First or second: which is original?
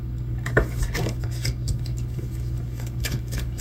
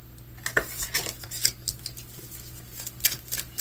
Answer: second